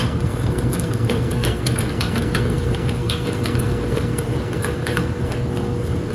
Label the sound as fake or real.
fake